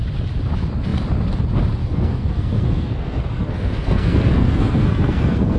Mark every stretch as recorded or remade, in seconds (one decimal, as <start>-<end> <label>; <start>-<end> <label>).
0.0-1.8 recorded; 1.8-5.6 remade